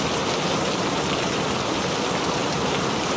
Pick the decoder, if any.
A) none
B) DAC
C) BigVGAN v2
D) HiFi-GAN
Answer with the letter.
C